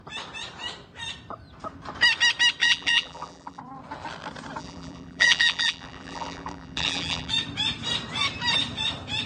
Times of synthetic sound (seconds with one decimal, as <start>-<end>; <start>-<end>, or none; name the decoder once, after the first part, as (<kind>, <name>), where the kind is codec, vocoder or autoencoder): 2.6-3.6 (vocoder, BigVGAN v2); 4.6-7.3